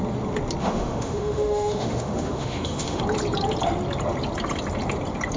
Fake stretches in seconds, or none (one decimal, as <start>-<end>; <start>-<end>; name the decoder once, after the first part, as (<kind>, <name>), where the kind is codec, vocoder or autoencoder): 0.6-3.0 (autoencoder, DAC-VAE)